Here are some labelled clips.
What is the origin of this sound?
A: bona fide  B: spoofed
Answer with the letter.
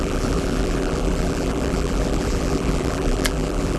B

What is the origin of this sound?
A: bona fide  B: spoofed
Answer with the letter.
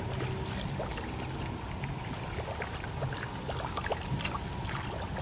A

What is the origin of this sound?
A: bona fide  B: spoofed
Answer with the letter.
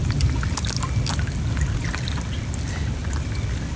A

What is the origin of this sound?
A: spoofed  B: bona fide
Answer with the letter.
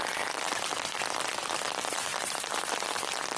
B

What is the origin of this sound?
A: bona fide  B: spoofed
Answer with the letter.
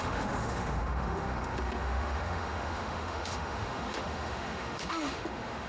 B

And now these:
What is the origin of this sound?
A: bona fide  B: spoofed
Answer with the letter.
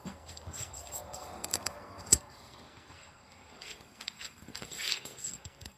B